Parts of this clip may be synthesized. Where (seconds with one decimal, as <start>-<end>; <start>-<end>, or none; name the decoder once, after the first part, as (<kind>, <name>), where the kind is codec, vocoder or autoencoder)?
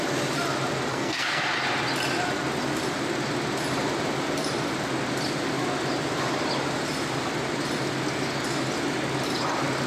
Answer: 0.9-1.4 (codec, SNAC)